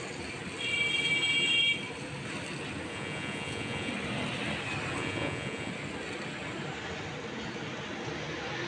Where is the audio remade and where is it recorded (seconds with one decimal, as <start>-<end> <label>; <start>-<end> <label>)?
0.0-2.9 recorded; 2.9-3.9 remade; 3.9-5.0 recorded; 5.0-5.7 remade; 5.7-8.7 recorded